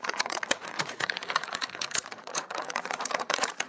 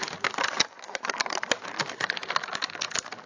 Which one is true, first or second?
second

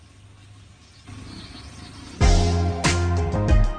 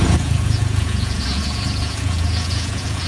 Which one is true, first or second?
first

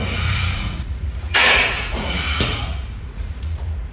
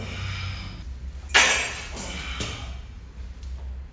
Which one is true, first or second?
second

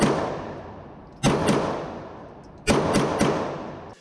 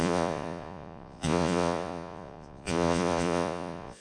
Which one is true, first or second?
first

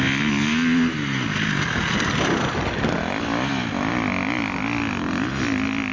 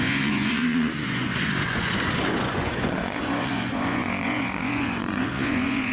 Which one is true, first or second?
first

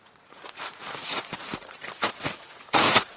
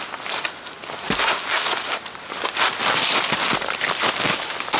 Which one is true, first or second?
second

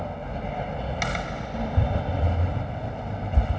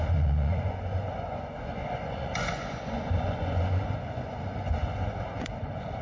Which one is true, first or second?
first